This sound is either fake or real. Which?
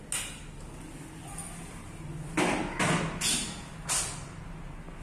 real